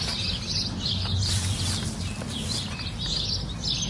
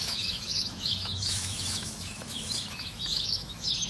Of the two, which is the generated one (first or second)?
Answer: second